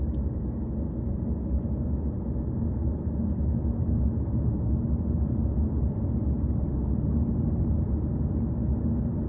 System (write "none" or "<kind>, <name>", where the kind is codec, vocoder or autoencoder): none